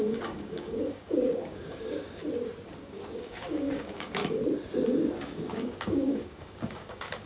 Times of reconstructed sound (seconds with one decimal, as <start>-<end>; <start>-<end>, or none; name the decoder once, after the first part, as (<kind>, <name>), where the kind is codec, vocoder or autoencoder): 0.0-2.2 (codec, DAC); 2.8-4.4; 5.1-7.3